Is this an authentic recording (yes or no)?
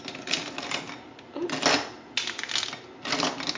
yes